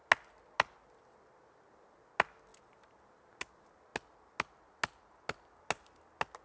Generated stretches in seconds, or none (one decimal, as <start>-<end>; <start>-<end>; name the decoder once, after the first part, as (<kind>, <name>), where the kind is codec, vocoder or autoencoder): none